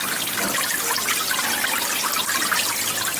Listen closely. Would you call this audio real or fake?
real